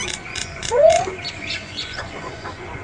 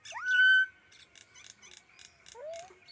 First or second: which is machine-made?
first